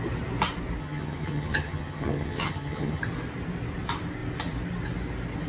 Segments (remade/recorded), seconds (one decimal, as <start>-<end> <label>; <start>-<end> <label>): 0.0-0.8 recorded; 0.8-3.0 remade; 3.0-5.5 recorded